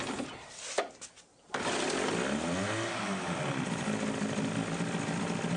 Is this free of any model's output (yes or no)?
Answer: yes